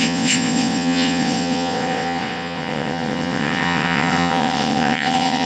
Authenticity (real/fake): fake